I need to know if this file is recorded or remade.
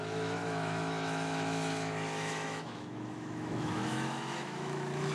remade